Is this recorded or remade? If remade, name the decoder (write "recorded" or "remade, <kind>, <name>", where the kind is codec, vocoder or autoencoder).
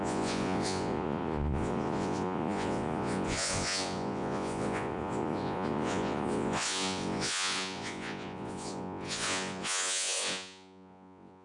remade, vocoder, Vocos